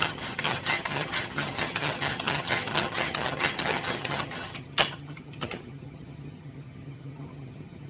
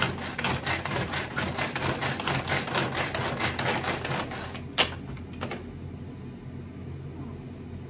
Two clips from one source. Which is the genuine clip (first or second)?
second